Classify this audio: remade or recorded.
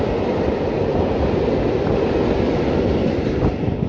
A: recorded